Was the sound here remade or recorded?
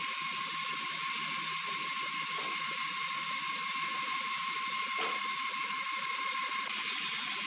recorded